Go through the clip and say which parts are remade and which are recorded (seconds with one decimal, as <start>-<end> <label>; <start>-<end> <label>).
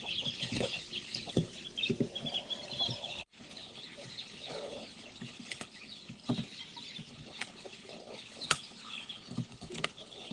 0.0-1.5 remade; 1.5-3.0 recorded; 3.0-6.3 remade; 6.3-7.1 recorded; 7.1-10.3 remade